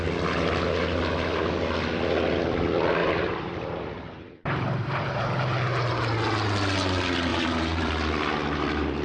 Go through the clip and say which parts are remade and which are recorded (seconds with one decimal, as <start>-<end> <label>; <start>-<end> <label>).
0.0-3.0 recorded; 3.0-5.2 remade; 5.2-7.3 recorded; 7.3-7.9 remade; 7.9-9.0 recorded